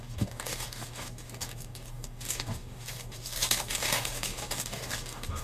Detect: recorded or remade remade